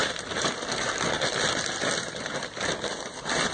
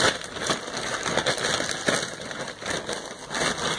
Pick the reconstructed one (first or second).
first